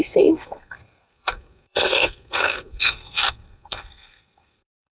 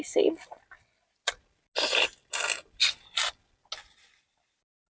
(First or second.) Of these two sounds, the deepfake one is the first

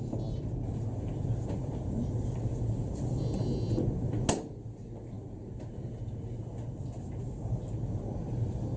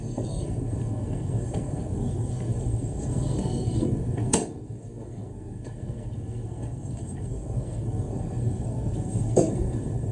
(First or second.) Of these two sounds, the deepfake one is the second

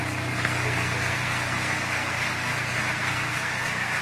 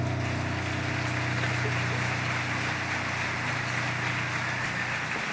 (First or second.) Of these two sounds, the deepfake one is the first